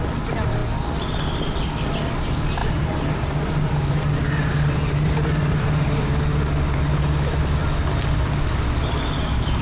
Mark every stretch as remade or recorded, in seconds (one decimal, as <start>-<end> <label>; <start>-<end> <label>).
0.0-2.6 recorded; 2.6-6.1 remade; 6.1-9.6 recorded